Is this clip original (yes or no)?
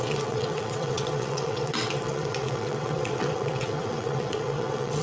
no